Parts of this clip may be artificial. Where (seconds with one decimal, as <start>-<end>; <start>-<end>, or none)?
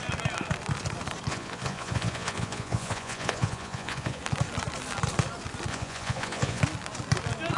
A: 1.3-4.2; 5.7-6.6